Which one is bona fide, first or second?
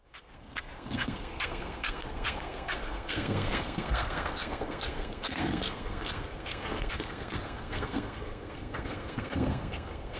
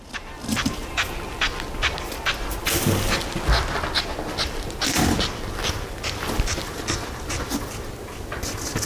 second